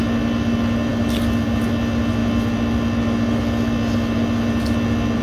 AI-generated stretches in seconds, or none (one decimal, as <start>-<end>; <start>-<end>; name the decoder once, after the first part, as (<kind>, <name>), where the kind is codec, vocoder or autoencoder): none